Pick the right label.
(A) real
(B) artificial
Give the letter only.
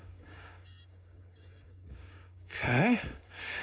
B